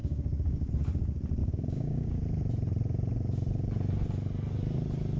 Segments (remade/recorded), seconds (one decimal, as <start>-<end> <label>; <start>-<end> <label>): 0.0-0.7 remade; 0.7-1.4 recorded; 1.4-2.2 remade; 2.2-5.2 recorded